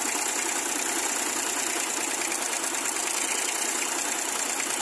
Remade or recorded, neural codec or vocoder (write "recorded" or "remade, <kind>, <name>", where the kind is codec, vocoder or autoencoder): recorded